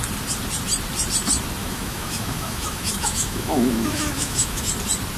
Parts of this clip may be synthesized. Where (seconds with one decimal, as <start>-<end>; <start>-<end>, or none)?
1.6-4.7